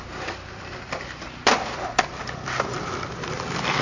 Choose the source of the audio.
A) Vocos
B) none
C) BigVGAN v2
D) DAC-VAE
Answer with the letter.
C